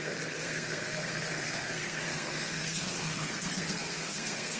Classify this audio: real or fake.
fake